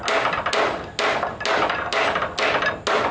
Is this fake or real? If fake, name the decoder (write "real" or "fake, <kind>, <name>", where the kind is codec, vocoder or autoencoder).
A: real